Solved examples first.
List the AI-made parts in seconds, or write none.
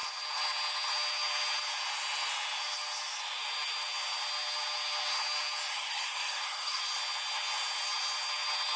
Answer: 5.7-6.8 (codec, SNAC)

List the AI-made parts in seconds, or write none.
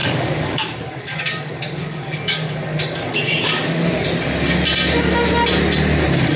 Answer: 0.0-3.8 (codec, DAC)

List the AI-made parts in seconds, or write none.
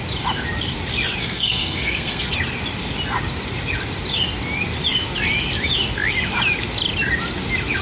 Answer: 1.2-2.3 (codec, SNAC)